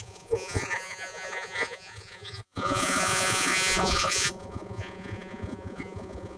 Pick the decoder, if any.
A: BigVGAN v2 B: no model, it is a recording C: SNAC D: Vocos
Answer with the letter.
D